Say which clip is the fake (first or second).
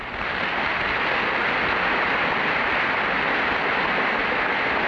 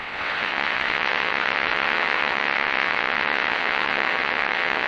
second